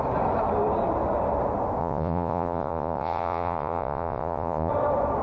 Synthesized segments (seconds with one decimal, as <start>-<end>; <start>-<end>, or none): 1.8-4.7